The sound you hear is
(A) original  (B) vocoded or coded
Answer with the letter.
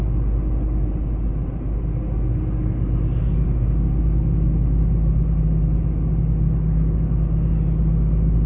A